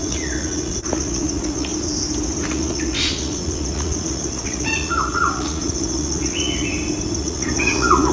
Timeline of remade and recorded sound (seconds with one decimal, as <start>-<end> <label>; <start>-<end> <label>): 0.0-1.7 remade; 1.7-2.5 recorded; 2.5-6.7 remade; 6.7-7.2 recorded; 7.2-8.1 remade

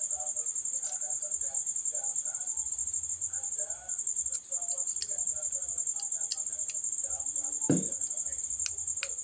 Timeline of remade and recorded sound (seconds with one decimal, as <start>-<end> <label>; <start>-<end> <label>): 0.0-9.2 recorded

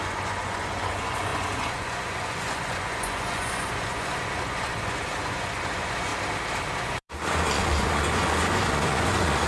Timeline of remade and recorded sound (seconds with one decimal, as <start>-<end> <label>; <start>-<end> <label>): 0.0-6.1 remade; 6.1-6.8 recorded; 6.8-9.5 remade